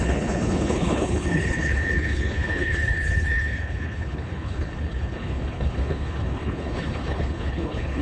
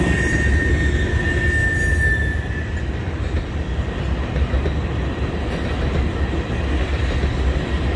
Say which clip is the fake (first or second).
first